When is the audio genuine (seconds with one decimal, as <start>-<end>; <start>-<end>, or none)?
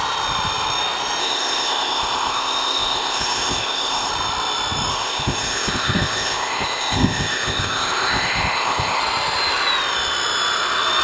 0.0-1.2; 4.1-4.9; 9.0-11.0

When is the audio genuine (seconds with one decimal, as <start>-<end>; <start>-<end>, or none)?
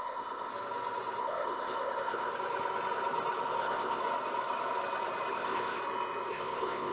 0.5-1.2; 2.3-3.5; 4.0-5.3; 5.8-6.3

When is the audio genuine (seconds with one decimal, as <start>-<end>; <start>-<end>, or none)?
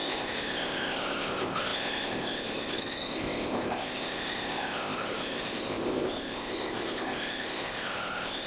none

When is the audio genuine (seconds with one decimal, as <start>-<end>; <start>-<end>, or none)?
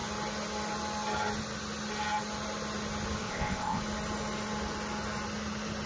0.0-3.2; 3.8-5.9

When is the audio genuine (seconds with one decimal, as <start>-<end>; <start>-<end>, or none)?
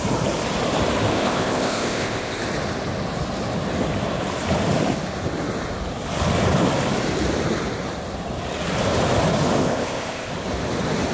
0.0-1.1; 2.4-9.6; 10.3-11.1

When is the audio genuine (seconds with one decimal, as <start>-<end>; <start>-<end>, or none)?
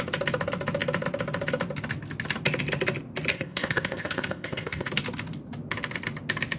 0.0-3.3; 4.9-6.6